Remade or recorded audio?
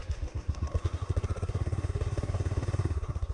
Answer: remade